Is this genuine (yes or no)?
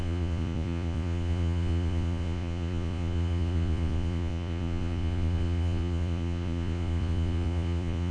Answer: no